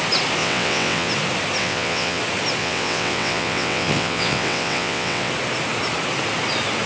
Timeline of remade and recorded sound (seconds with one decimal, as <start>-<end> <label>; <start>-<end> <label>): 0.0-0.4 recorded; 0.4-1.1 remade; 1.1-1.6 recorded; 1.6-2.2 remade; 2.2-2.6 recorded; 2.6-5.3 remade; 5.3-6.9 recorded